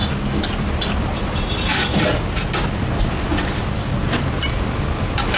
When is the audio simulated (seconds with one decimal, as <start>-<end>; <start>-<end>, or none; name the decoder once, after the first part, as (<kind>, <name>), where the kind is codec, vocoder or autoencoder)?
none